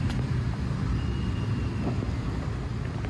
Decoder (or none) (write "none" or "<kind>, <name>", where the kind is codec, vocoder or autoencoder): none